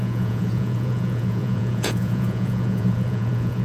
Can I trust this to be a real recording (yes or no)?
no